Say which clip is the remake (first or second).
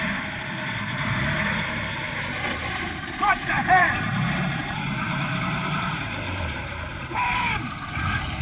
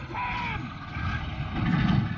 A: first